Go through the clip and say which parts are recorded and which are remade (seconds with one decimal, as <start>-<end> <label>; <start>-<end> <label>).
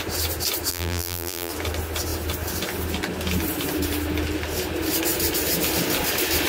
0.0-0.7 recorded; 0.7-1.5 remade; 1.5-6.5 recorded